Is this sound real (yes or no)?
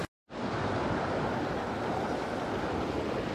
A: yes